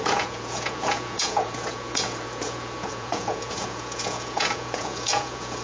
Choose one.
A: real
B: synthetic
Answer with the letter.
B